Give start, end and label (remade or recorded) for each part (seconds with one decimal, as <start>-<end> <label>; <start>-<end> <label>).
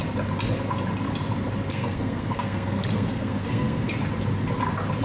0.0-1.7 recorded; 1.7-4.0 remade; 4.0-5.0 recorded